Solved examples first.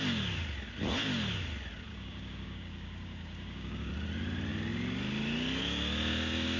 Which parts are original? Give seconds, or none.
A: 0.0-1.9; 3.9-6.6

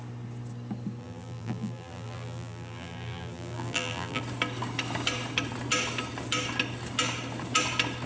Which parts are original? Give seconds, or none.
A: 0.0-1.0; 4.2-8.1